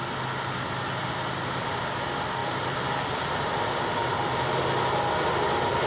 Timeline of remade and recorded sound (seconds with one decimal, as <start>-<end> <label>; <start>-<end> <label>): 0.0-5.9 recorded